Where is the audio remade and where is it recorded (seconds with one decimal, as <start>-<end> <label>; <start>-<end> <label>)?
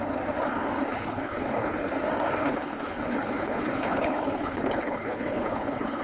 0.0-0.9 recorded; 0.9-1.9 remade; 1.9-2.4 recorded; 2.4-6.0 remade